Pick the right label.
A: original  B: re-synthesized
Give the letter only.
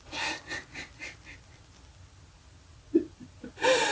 B